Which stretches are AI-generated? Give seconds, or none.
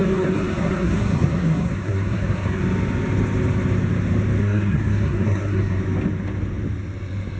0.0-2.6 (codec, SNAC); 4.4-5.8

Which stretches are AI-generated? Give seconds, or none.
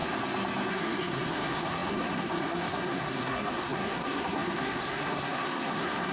0.7-6.1 (codec, SNAC)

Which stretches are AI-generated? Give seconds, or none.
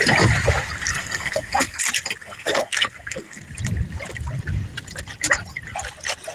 0.9-1.8 (codec, SNAC); 2.2-3.4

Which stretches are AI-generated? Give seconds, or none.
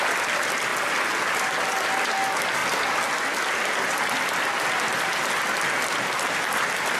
none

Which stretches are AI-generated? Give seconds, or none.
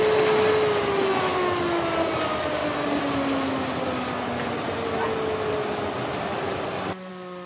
none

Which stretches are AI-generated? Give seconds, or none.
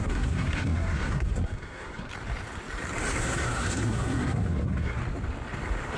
0.0-2.1 (codec, SNAC); 3.2-5.0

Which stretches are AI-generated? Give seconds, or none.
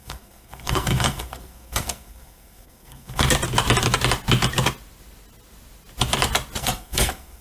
0.0-3.2 (codec, SNAC); 6.6-7.4